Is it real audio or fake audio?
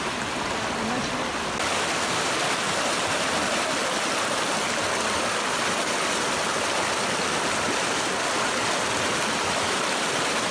real